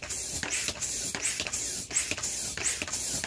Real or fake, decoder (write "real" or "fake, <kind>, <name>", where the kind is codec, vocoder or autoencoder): real